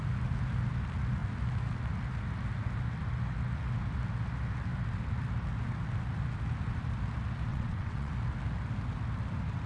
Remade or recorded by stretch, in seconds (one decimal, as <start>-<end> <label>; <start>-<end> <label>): 0.0-7.5 recorded; 7.5-8.1 remade; 8.1-9.7 recorded